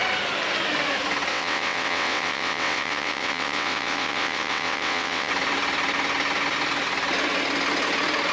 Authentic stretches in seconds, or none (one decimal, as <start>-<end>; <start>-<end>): 0.0-1.3; 5.3-8.3